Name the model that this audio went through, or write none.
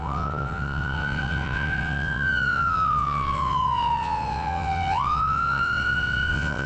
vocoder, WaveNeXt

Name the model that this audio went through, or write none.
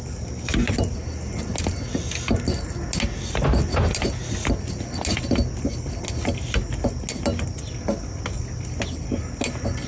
none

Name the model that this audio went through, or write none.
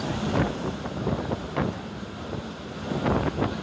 none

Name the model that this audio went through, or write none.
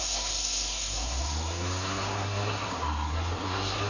codec, SNAC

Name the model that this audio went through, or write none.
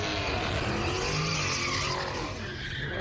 none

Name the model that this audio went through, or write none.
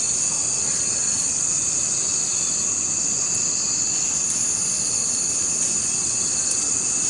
none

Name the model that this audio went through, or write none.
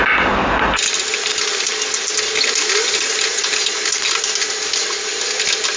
none